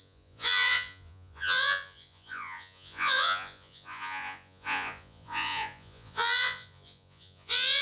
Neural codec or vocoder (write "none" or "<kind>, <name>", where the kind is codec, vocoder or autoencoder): vocoder, Vocos